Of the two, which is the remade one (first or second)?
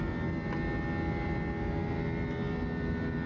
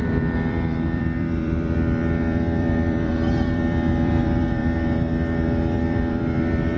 second